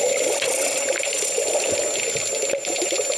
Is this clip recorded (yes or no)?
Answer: yes